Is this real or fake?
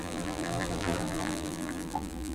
fake